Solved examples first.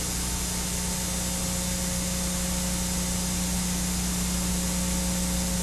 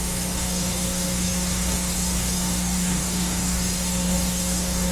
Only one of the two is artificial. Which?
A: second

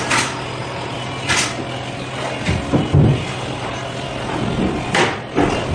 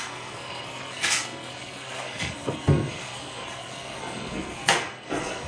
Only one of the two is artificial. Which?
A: second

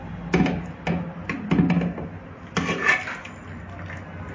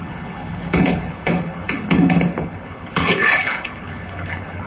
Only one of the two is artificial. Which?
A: second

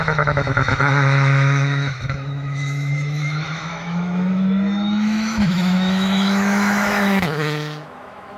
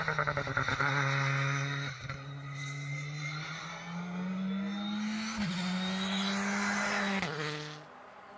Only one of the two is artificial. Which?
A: first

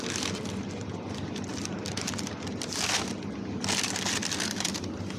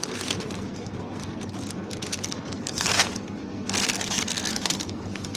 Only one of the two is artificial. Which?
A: second